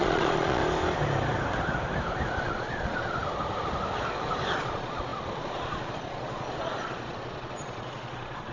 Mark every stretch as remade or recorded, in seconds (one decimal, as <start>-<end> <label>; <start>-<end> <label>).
0.0-0.6 remade; 0.6-2.4 recorded; 2.4-3.2 remade; 3.2-4.5 recorded; 4.5-8.5 remade